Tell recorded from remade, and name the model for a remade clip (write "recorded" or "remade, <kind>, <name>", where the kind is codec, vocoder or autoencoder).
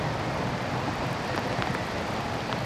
recorded